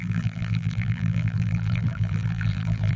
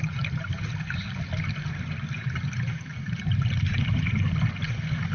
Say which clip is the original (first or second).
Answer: second